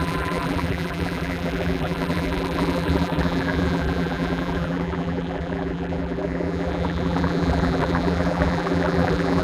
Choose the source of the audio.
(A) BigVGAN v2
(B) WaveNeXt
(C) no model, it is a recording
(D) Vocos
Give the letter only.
A